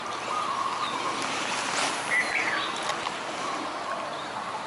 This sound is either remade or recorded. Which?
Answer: recorded